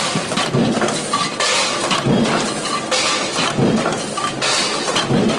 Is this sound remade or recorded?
recorded